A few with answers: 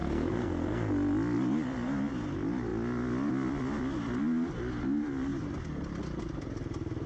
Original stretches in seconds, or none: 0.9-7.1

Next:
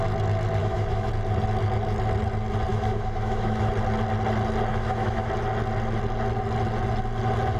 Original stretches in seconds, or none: 0.0-0.6; 1.1-2.7; 3.7-4.7; 5.3-7.6